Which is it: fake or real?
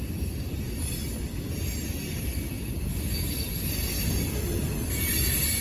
real